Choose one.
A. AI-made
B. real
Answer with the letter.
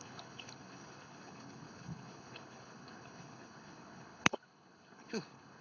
A